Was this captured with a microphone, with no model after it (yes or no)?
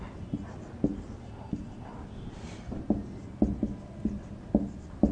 yes